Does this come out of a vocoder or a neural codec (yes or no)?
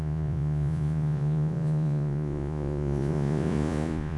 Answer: yes